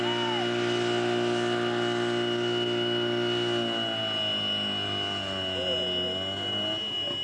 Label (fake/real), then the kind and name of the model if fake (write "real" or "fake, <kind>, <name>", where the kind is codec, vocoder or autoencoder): real